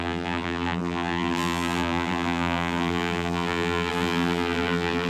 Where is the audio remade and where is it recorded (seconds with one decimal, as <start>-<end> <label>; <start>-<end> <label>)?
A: 0.0-5.1 remade